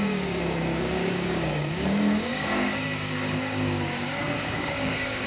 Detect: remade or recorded remade